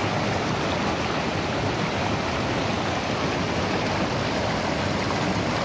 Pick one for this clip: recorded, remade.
recorded